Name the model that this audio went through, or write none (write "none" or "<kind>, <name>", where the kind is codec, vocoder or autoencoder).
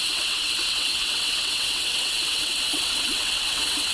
vocoder, WaveNeXt